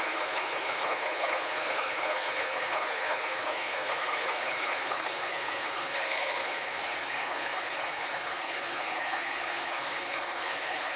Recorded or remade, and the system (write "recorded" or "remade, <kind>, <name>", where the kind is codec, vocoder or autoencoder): remade, codec, HILCodec